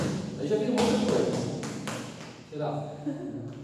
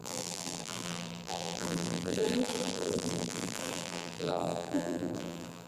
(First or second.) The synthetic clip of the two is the second